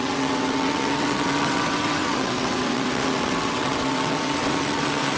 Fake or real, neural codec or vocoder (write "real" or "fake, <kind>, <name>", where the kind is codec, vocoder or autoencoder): fake, vocoder, WaveNeXt